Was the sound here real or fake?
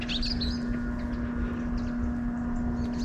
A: real